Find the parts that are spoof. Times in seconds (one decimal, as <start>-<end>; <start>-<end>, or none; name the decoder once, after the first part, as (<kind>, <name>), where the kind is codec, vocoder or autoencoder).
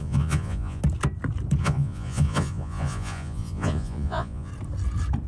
0.0-0.8 (vocoder, Vocos); 1.6-4.5